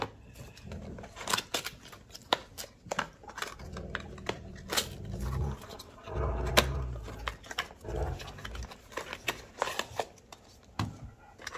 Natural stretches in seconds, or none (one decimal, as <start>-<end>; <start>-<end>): 0.0-11.6